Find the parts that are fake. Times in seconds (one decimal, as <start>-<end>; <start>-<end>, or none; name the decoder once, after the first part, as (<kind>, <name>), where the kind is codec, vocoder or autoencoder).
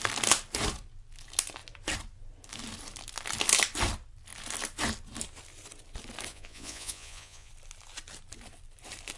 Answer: 6.3-7.5 (vocoder, Vocos)